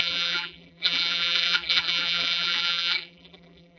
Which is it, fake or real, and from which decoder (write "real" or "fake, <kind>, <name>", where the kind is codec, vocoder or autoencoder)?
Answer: fake, vocoder, BigVGAN v2